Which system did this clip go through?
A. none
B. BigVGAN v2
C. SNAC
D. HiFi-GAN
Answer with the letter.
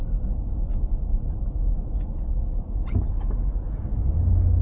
A